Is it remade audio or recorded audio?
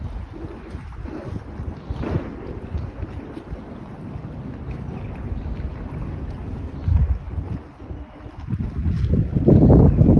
recorded